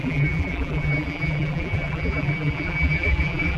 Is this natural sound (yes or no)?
no